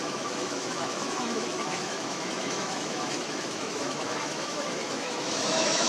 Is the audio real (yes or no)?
no